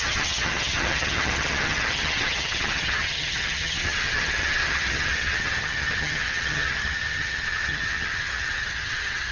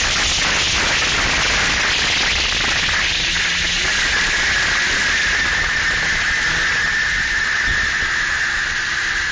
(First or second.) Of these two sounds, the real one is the second